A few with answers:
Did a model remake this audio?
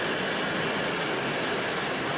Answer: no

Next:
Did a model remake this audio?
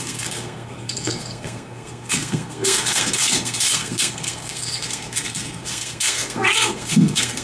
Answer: yes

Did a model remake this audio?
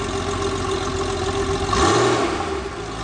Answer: no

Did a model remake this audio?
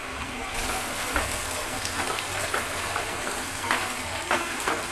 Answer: yes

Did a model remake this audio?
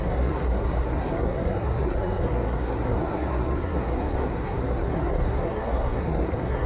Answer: yes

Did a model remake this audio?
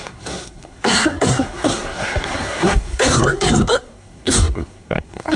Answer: yes